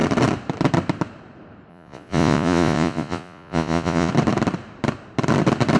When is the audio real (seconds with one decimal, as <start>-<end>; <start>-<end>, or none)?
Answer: 0.0-1.7; 4.1-5.8